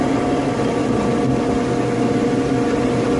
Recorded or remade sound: recorded